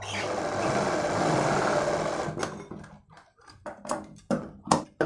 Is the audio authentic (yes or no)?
yes